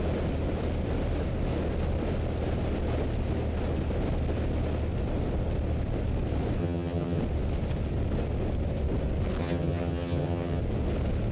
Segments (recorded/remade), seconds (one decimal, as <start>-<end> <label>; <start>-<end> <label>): 0.0-6.6 recorded; 6.6-7.2 remade; 7.2-9.4 recorded; 9.4-10.6 remade; 10.6-11.3 recorded